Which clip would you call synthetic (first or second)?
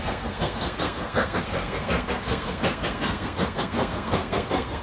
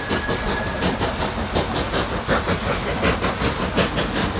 first